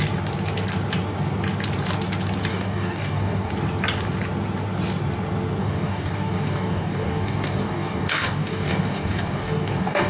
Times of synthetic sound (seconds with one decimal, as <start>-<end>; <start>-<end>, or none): 2.5-3.5; 5.6-10.1